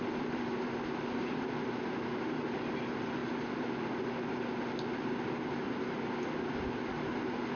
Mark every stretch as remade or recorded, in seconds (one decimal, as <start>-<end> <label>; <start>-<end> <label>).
0.0-7.6 recorded